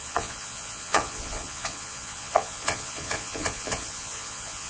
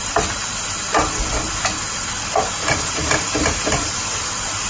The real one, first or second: second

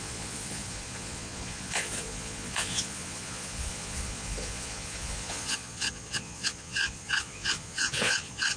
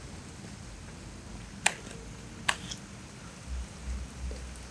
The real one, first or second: second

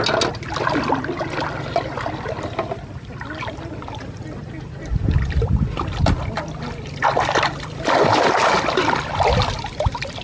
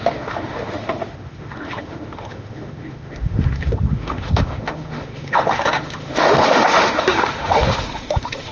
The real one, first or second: first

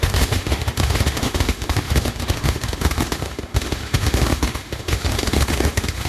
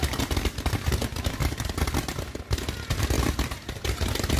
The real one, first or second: second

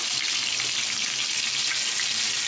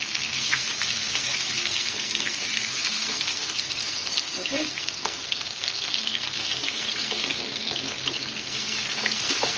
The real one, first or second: first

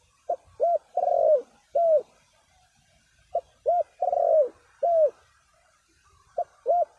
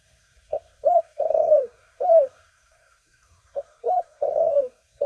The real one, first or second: first